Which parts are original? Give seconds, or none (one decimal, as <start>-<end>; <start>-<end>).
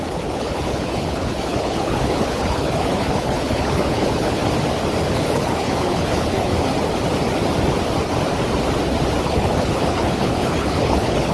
4.4-5.0; 6.5-9.2